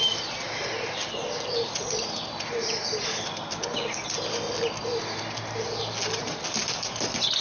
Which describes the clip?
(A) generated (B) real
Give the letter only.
B